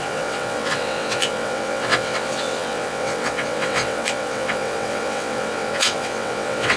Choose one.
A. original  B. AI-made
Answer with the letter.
B